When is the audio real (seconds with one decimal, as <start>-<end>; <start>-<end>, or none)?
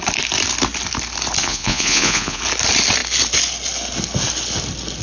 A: 0.0-1.4; 2.4-5.0